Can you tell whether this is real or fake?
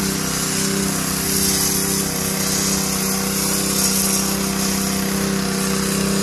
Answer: real